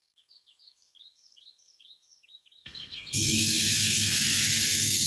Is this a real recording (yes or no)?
no